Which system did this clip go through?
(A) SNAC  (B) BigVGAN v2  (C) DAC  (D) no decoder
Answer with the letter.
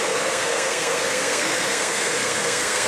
A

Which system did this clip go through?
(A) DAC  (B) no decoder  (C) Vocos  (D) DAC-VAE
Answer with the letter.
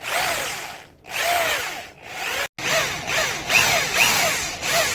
B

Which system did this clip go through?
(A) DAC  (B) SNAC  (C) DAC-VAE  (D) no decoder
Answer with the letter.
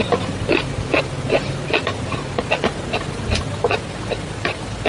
D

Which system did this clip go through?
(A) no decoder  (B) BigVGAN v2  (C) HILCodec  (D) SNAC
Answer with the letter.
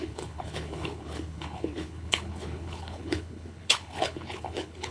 C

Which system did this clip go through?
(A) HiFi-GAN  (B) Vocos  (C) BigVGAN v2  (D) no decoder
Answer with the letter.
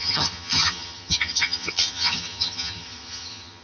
A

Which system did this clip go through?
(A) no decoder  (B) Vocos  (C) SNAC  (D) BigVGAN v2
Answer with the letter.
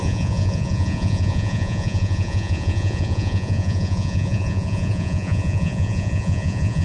B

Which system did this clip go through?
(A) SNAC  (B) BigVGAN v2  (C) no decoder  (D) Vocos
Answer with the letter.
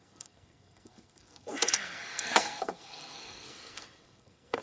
A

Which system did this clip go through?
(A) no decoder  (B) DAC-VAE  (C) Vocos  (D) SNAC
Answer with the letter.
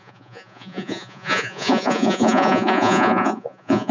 C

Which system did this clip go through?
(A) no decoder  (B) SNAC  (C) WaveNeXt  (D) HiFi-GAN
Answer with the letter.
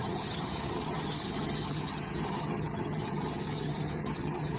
D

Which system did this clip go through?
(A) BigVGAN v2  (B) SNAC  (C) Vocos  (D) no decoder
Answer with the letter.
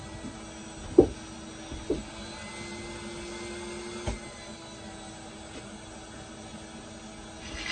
D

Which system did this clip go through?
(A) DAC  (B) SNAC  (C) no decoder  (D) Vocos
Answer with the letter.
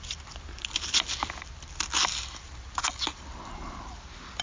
C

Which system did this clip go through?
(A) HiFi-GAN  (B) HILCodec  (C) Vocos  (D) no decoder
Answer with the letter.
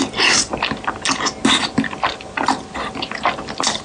D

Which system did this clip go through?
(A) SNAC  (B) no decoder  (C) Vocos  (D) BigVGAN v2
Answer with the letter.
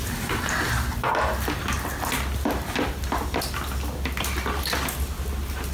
B